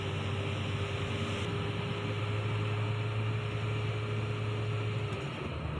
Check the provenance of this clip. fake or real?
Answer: real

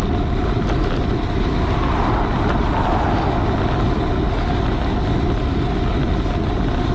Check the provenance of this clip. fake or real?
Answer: real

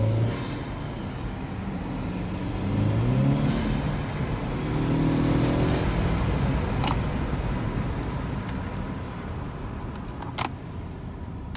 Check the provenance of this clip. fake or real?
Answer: real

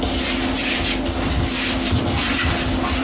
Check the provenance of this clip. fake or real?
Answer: real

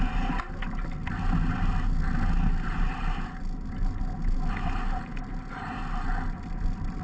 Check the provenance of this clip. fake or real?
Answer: real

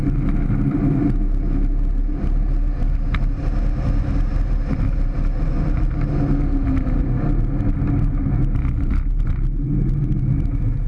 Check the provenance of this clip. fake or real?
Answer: real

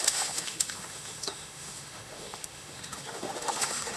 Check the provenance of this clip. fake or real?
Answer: fake